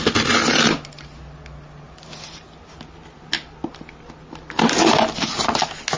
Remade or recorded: recorded